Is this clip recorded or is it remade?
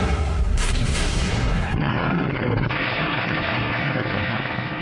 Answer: remade